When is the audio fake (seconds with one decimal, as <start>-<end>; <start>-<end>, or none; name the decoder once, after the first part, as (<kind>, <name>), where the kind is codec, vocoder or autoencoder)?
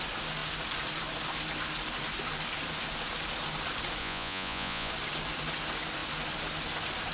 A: 4.0-4.9 (vocoder, Vocos)